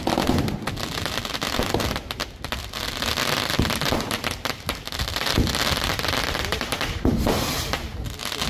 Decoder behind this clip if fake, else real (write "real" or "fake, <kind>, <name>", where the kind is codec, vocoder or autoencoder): real